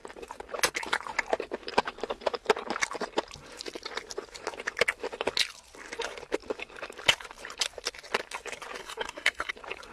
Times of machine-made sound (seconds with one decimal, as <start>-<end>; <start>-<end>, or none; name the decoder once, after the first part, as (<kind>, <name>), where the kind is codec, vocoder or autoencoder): 8.8-9.5 (codec, SNAC)